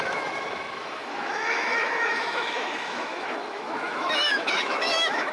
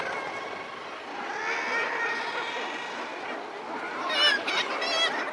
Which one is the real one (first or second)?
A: second